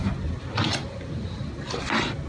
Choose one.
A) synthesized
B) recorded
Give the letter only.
B